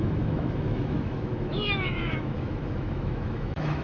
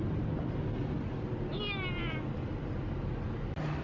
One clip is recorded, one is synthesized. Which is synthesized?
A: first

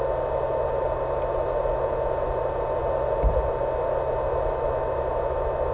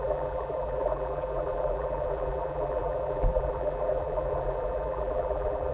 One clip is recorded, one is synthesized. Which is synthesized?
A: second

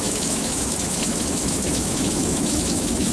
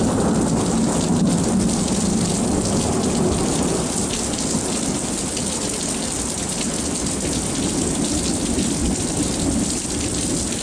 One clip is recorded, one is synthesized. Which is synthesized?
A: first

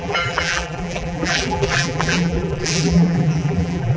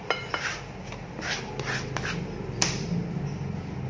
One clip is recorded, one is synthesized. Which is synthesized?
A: first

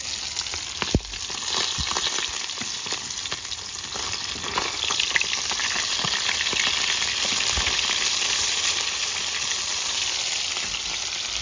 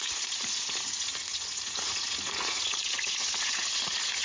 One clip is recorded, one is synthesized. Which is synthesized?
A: second